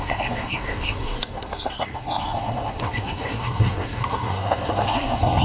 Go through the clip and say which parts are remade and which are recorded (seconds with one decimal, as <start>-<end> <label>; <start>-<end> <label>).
0.0-5.4 remade